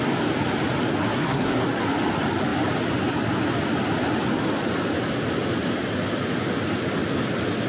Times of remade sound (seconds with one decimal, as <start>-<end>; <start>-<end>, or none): 1.1-1.6